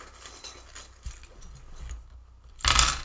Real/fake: real